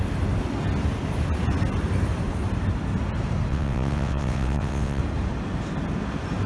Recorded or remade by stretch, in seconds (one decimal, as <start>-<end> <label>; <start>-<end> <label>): 0.0-3.5 recorded; 3.5-5.0 remade; 5.0-6.5 recorded